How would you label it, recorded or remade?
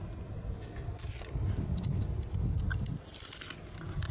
recorded